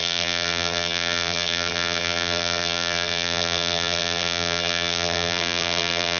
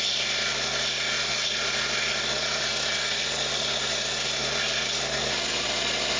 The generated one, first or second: first